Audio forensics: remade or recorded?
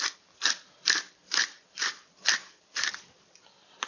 remade